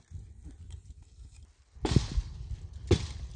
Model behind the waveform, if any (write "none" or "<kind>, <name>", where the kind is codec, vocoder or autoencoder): none